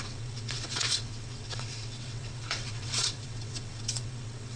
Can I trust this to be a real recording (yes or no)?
no